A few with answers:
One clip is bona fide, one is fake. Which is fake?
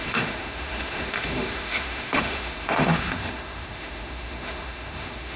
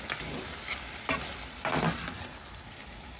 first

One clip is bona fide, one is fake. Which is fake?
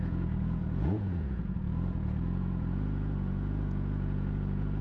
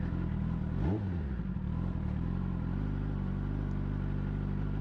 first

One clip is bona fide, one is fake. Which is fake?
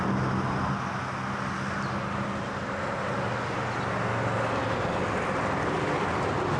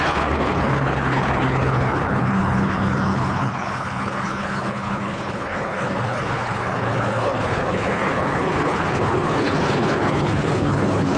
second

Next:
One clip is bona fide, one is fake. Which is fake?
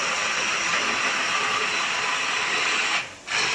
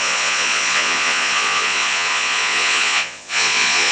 second